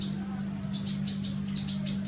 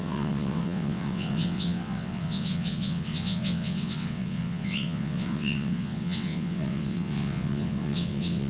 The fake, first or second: second